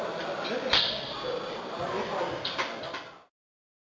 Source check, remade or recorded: recorded